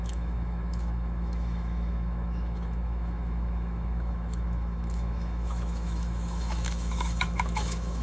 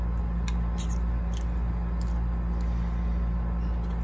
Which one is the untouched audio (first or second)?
second